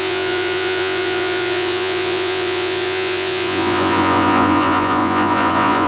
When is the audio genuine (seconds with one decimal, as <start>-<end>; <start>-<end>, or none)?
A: none